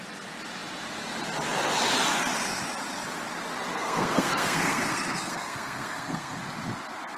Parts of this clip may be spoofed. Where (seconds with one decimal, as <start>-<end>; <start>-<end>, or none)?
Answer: 3.7-6.4